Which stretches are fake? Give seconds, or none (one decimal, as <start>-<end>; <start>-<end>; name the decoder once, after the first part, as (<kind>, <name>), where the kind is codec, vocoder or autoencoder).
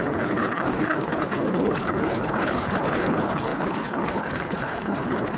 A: 0.0-5.4 (codec, HILCodec)